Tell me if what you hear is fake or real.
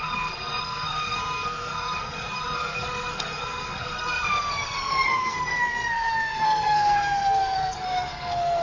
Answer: fake